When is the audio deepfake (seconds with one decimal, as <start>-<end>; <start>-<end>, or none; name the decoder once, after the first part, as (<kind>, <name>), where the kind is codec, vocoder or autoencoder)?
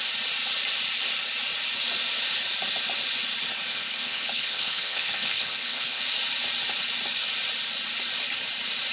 3.7-6.0 (codec, HILCodec)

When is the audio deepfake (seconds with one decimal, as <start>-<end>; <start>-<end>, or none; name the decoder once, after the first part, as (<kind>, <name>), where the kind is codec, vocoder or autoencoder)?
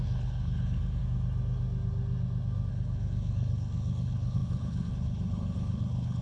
0.0-1.0 (codec, HILCodec); 2.7-6.2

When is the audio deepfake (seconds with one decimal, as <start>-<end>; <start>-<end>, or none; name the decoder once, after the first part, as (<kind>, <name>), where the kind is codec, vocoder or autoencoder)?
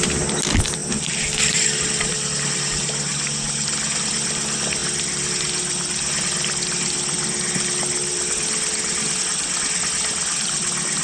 none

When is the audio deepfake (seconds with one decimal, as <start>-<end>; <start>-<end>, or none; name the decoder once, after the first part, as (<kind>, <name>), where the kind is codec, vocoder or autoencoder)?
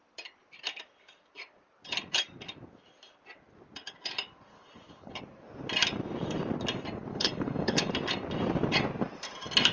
4.5-5.2 (codec, HILCodec); 7.1-7.9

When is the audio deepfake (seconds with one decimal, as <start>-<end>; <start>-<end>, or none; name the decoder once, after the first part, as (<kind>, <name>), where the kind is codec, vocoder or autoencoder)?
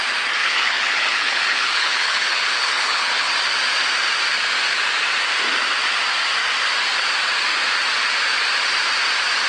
0.4-3.3 (codec, HILCodec)